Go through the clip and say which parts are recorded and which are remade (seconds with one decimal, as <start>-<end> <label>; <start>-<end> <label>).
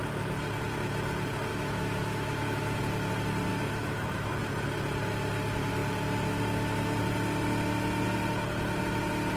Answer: 0.0-1.5 recorded; 1.5-2.8 remade; 2.8-3.5 recorded; 3.5-4.4 remade; 4.4-9.4 recorded